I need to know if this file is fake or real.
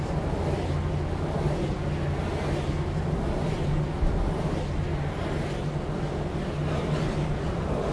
real